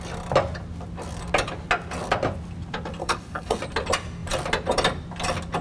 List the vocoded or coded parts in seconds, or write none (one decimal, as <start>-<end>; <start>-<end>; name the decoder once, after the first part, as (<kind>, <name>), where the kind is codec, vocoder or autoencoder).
3.0-3.6 (codec, SNAC)